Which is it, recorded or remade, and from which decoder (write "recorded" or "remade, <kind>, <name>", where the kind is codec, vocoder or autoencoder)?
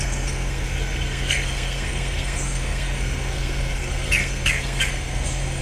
remade, codec, SNAC